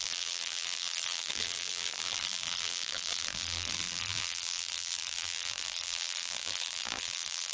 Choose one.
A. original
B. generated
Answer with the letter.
B